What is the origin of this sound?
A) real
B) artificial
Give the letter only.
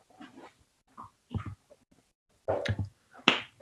A